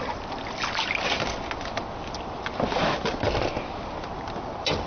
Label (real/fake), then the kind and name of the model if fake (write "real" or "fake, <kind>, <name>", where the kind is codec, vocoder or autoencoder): real